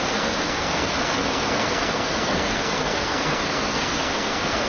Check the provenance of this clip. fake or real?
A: fake